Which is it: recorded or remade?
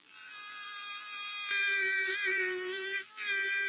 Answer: remade